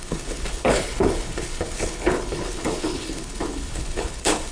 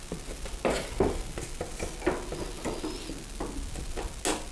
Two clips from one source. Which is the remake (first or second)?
first